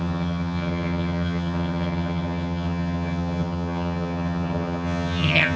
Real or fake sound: fake